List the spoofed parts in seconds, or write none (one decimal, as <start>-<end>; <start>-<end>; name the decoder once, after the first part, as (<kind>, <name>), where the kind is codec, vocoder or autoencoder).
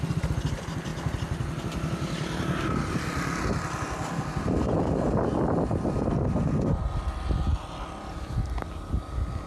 none